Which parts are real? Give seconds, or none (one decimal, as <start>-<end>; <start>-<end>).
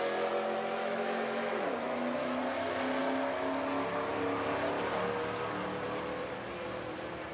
0.0-0.8; 2.4-7.3